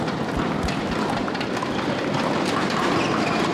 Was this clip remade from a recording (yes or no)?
no